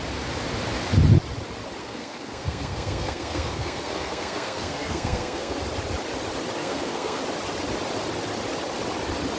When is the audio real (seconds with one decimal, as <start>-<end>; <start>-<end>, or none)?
0.0-1.8; 5.6-6.6; 7.2-9.4

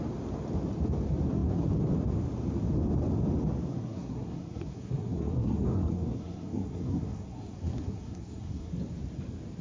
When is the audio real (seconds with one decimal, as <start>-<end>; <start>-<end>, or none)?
0.0-3.7; 8.7-9.6

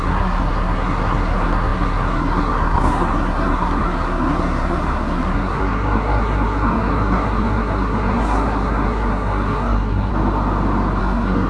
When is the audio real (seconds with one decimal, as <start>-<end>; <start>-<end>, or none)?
10.1-11.0